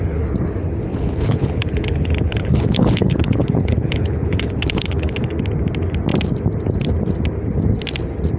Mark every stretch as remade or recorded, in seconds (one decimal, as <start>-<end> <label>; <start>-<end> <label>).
0.0-0.9 recorded; 0.9-5.4 remade; 5.4-8.4 recorded